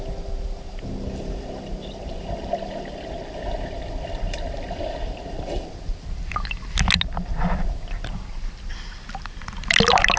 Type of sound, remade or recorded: recorded